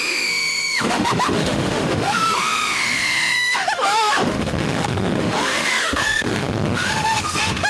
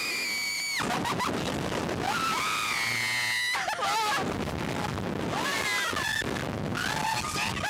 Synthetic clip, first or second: first